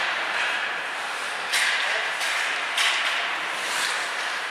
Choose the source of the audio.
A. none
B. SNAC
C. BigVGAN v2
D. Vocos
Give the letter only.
C